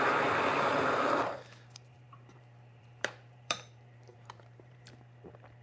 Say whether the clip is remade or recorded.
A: remade